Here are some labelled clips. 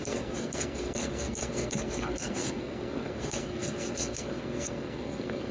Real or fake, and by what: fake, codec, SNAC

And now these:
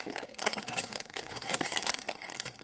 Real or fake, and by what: fake, codec, SNAC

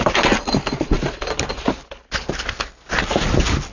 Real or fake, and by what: real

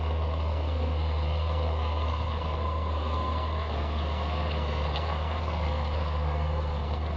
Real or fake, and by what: fake, codec, SNAC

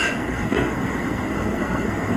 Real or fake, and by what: fake, codec, SNAC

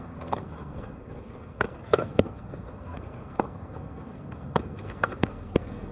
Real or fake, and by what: fake, codec, SNAC